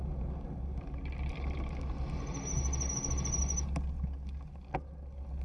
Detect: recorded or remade recorded